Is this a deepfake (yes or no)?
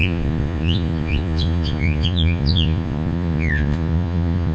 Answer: yes